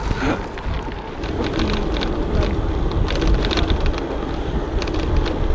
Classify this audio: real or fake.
real